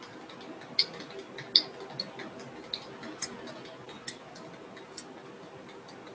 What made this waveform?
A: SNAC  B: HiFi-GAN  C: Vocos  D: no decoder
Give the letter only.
D